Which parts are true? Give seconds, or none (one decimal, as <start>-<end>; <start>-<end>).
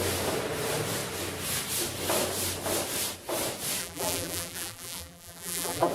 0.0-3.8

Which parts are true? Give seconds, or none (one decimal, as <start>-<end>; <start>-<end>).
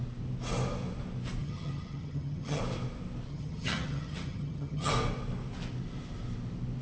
0.0-1.4; 2.6-3.3; 4.9-6.8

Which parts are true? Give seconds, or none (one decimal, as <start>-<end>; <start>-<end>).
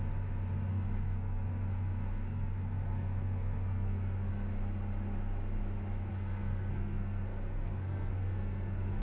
0.0-0.7; 4.3-6.1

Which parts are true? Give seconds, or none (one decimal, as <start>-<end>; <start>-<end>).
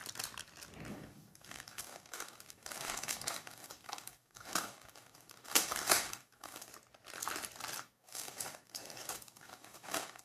0.0-0.9; 6.7-7.8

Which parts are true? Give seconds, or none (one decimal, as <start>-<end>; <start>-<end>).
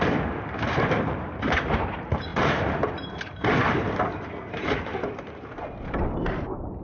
none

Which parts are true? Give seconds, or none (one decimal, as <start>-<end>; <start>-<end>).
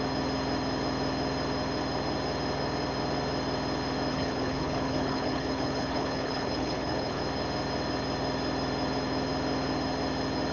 0.0-4.1; 7.2-10.5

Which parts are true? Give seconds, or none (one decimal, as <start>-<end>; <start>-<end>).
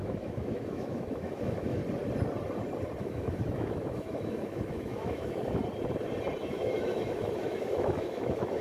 1.8-3.0; 5.6-6.4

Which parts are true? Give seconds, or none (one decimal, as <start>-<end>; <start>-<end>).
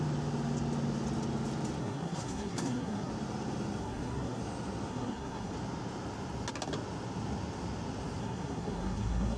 0.0-1.8; 3.1-3.8; 4.4-4.9; 5.5-8.2